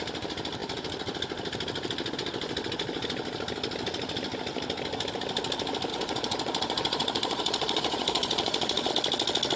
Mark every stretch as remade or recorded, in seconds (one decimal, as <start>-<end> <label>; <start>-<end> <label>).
0.0-5.9 recorded; 5.9-8.9 remade; 8.9-9.6 recorded